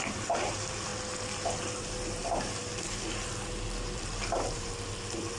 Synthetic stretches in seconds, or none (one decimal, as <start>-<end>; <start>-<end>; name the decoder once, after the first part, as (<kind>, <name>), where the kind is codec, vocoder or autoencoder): 0.0-0.9 (vocoder, BigVGAN v2); 1.7-5.4